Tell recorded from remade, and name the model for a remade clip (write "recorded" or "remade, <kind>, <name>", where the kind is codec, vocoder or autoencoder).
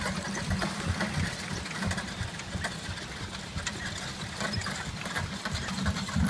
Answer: recorded